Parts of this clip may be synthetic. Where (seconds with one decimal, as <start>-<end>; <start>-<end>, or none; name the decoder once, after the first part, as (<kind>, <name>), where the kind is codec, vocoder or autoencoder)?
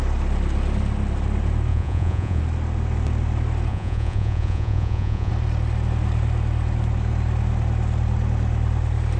1.7-2.4 (vocoder, Vocos); 3.7-5.3